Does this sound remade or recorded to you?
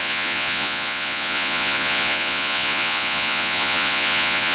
remade